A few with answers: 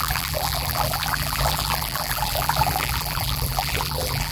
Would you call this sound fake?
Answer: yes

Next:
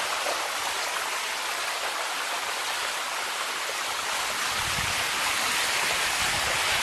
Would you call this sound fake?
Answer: no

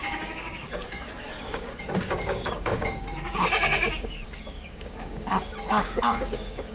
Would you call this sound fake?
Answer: yes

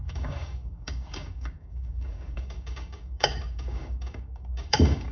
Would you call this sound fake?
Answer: yes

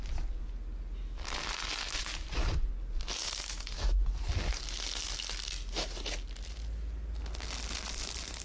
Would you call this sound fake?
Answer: no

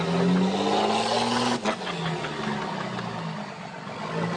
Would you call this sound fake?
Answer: no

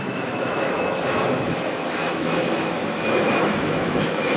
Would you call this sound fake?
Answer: yes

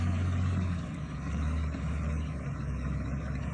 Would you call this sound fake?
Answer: yes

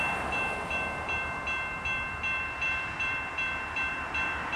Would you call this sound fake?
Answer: yes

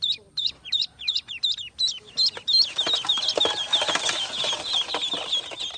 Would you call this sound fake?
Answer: no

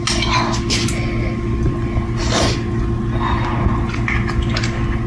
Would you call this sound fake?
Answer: no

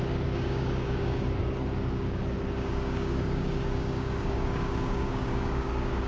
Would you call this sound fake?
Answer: yes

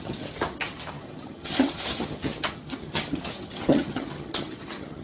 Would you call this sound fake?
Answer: yes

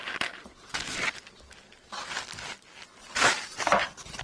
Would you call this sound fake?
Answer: no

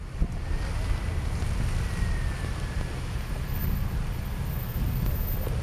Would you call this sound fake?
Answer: no